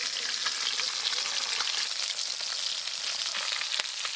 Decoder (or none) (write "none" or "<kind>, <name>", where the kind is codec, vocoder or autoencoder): none